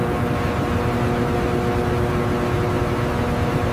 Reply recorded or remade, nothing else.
recorded